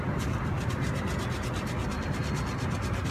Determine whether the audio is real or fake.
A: real